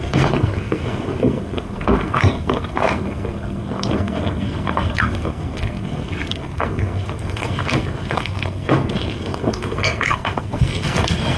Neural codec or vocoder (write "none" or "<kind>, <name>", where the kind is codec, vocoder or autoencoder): codec, SNAC